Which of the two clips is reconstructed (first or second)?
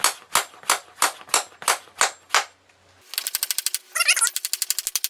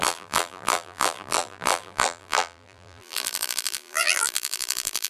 second